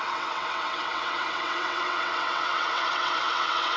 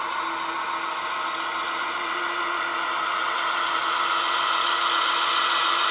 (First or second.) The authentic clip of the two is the second